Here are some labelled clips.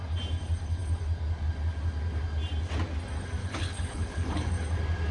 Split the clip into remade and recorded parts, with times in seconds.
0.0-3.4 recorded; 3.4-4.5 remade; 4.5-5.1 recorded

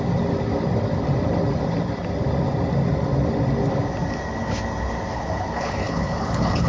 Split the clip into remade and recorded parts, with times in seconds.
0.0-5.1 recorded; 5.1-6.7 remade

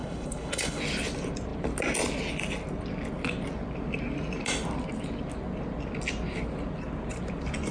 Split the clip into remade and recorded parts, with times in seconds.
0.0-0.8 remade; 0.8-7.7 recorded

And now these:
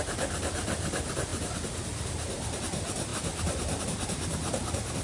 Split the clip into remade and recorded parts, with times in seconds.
0.0-5.0 recorded

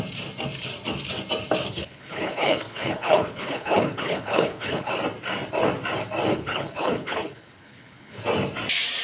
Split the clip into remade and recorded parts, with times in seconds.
0.0-1.7 recorded; 1.7-4.9 remade; 4.9-6.3 recorded; 6.3-8.2 remade; 8.2-9.0 recorded

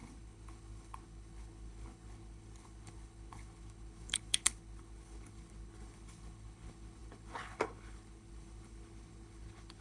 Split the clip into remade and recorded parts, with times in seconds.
0.0-9.8 remade